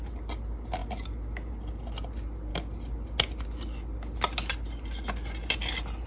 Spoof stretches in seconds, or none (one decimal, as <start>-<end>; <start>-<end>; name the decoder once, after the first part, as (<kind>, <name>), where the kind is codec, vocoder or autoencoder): none